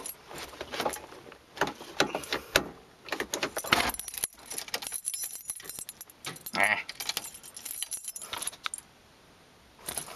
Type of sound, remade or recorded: recorded